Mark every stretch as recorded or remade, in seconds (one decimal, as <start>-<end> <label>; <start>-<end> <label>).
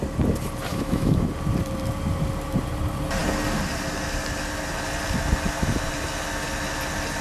0.0-0.7 recorded; 0.7-1.3 remade; 1.3-7.2 recorded